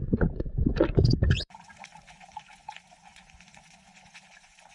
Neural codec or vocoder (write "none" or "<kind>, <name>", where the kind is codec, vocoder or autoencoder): vocoder, Vocos